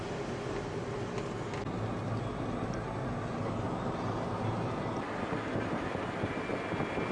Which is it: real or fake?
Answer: real